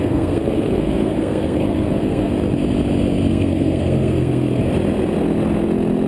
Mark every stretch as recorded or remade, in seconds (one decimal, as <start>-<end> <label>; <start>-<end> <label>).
0.0-2.3 remade; 2.3-3.3 recorded; 3.3-4.6 remade; 4.6-6.1 recorded